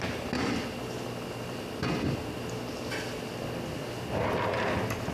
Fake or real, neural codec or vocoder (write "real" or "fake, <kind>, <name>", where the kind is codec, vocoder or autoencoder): real